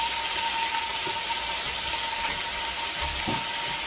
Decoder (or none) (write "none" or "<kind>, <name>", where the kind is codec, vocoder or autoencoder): none